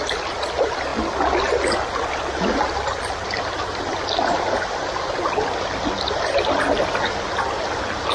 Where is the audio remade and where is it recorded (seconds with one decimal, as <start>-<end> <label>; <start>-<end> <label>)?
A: 0.0-8.1 recorded